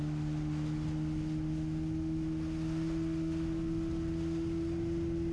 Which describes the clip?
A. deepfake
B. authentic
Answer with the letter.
B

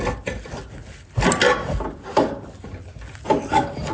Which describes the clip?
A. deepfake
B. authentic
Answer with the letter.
B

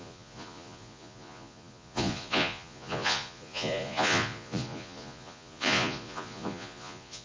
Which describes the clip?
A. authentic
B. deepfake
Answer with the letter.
B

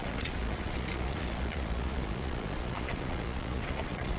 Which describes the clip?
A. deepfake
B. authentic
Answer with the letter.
A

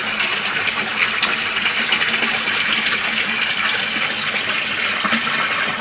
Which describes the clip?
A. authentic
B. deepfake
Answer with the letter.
A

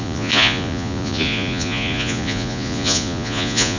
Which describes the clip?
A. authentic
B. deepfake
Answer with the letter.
B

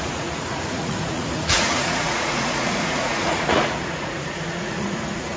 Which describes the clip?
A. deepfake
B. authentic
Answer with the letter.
A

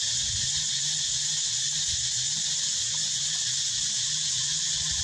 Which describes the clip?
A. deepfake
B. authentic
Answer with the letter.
B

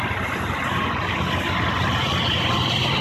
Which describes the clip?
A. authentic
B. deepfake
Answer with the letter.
A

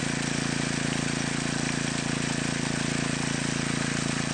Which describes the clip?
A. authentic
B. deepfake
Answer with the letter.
A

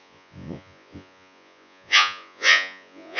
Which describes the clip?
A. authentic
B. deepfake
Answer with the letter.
B